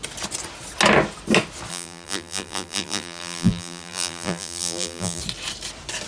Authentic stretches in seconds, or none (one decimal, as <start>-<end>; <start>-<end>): 0.0-1.7; 5.2-6.1